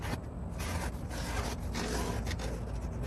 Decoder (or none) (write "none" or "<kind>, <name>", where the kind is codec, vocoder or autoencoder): none